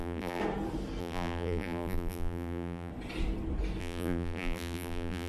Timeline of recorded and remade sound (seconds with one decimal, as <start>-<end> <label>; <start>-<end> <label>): 0.0-0.4 remade; 0.4-1.0 recorded; 1.0-2.9 remade; 2.9-3.8 recorded; 3.8-5.3 remade